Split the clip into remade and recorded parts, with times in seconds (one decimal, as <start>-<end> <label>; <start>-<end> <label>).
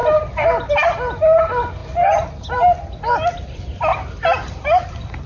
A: 0.0-5.3 recorded